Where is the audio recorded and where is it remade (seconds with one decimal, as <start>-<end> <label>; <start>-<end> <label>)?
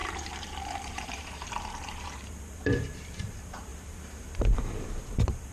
0.0-5.5 remade